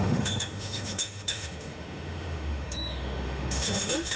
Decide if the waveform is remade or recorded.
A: remade